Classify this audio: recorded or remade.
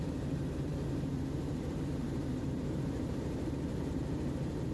remade